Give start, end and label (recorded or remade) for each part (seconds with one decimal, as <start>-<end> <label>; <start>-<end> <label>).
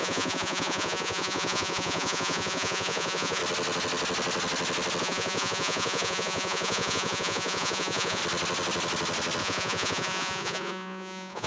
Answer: 0.0-3.4 remade; 3.4-5.0 recorded; 5.0-8.2 remade; 8.2-9.4 recorded; 9.4-11.5 remade